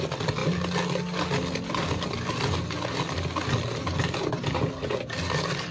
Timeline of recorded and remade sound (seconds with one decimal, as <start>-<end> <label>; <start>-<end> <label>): 0.0-5.7 recorded